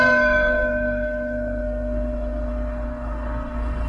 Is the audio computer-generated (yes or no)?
yes